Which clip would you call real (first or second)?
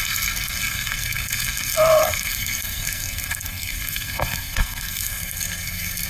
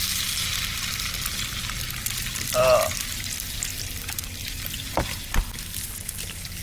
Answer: second